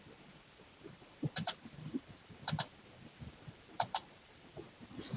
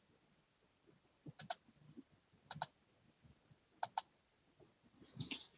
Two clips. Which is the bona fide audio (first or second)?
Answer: second